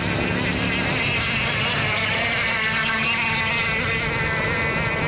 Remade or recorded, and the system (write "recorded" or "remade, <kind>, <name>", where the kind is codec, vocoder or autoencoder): recorded